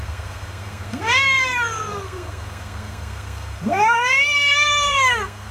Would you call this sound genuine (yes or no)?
no